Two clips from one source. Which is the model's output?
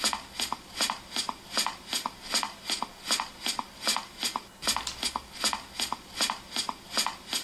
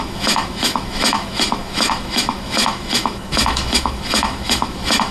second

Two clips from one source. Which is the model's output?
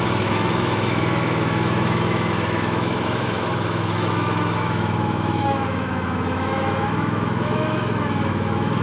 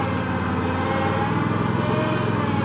first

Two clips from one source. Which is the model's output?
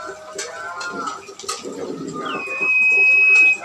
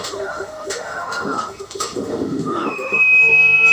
second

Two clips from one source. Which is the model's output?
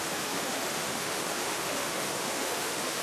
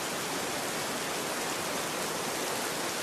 first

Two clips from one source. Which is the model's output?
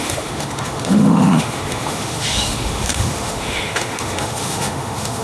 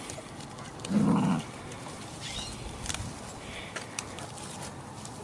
first